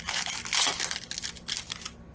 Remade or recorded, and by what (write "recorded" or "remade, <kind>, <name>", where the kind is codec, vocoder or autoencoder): recorded